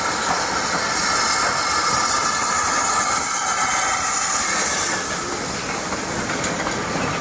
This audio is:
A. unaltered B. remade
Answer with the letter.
A